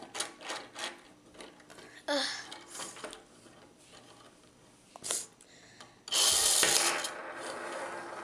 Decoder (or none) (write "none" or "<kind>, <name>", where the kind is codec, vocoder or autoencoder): none